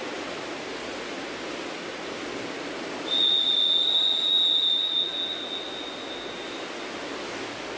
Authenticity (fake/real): real